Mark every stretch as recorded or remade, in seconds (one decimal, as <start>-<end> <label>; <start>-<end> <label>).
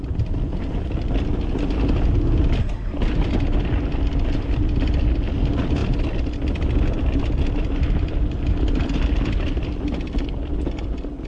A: 0.0-11.3 recorded